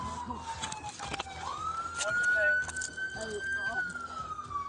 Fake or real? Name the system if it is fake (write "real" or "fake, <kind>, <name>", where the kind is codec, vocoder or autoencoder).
real